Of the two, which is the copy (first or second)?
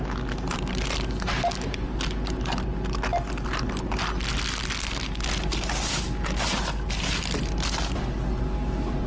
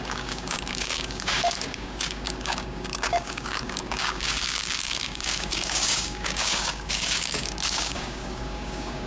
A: second